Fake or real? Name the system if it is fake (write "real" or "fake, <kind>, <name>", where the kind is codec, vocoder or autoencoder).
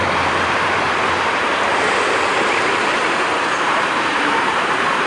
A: fake, vocoder, BigVGAN v2